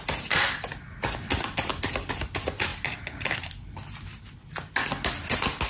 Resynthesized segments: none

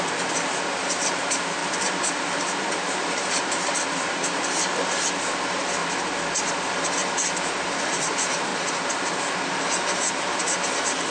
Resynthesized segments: 0.0-5.8 (vocoder, BigVGAN v2); 7.6-8.5; 10.1-11.1